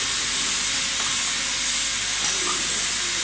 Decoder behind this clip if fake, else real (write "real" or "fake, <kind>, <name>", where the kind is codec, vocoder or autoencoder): real